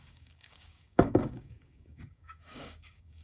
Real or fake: fake